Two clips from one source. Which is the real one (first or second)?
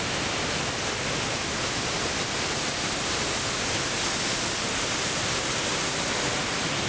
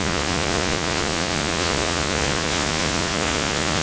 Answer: first